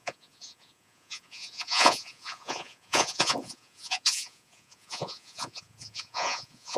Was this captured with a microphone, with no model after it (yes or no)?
no